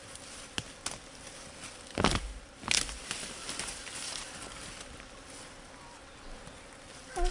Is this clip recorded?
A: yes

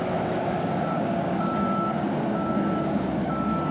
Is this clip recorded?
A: no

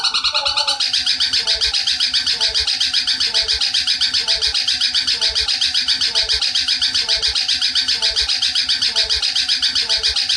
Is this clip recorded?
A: yes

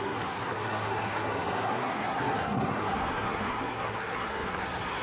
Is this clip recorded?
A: no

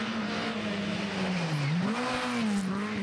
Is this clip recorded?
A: yes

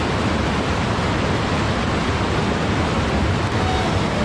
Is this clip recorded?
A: yes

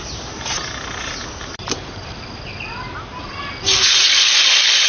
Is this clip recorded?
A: yes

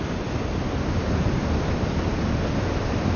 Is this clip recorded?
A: yes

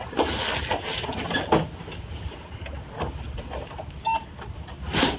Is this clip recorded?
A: yes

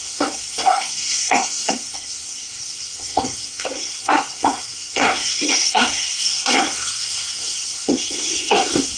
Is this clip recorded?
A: no